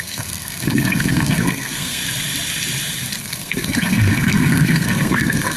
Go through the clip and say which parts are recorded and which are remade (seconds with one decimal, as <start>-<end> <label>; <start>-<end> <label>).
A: 0.0-2.0 remade; 2.0-3.2 recorded; 3.2-5.6 remade